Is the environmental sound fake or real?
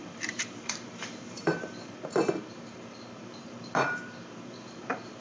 fake